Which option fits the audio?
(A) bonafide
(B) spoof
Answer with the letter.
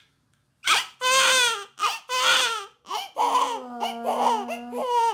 A